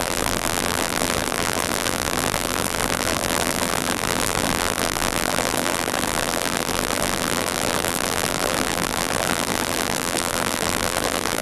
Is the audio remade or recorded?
remade